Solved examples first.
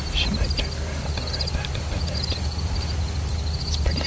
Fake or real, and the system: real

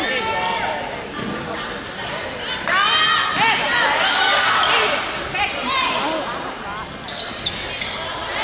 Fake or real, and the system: real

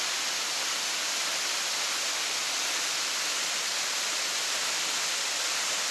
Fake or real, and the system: real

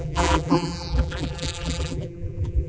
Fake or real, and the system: fake, vocoder, BigVGAN v2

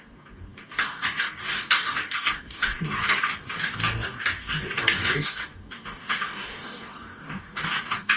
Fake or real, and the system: fake, codec, DAC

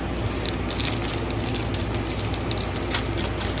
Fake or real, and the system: real